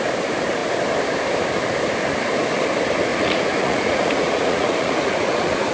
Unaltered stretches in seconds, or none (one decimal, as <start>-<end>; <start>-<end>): 0.0-3.1